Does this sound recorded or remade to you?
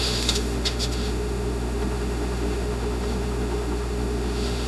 remade